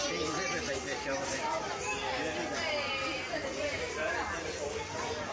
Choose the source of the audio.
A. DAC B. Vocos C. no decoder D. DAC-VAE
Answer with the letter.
C